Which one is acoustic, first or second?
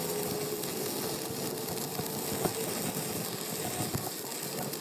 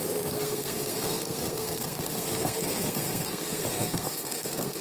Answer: first